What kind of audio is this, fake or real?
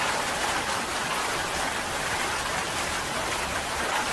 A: fake